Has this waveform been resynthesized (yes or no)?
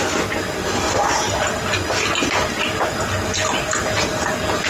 no